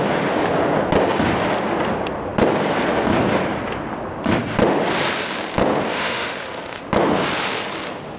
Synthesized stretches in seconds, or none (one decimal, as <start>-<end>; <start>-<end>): 5.9-6.8